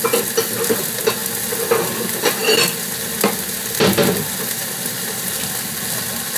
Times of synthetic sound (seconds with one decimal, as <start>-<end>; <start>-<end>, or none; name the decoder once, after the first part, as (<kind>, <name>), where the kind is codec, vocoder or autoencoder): none